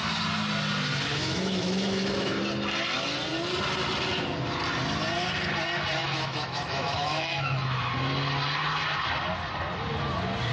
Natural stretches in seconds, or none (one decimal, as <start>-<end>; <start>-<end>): 0.0-1.1; 2.4-6.0; 7.9-10.5